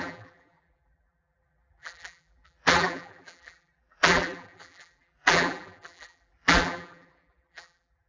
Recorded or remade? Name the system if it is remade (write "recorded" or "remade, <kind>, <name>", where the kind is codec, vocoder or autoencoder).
remade, vocoder, BigVGAN v2